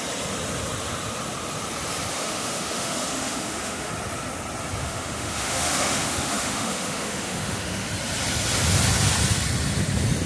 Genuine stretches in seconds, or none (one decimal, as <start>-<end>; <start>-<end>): 0.0-2.1; 3.9-4.8; 7.9-10.3